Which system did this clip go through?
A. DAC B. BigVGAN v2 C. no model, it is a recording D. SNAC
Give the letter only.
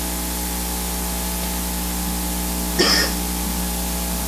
C